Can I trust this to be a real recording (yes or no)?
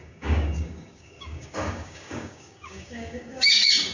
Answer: no